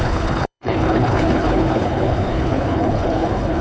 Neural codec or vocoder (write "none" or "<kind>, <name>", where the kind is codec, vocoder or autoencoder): codec, HILCodec